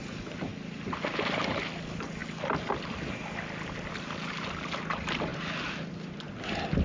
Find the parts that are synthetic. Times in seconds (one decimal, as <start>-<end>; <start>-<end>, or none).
none